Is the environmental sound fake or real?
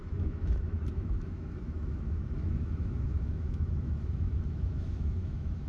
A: fake